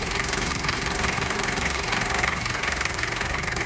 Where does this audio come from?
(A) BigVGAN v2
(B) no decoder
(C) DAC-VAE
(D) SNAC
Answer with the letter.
D